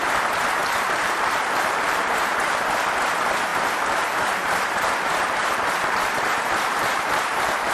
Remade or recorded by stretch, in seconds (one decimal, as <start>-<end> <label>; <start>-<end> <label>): 0.0-0.6 recorded; 0.6-2.6 remade; 2.6-3.5 recorded; 3.5-7.7 remade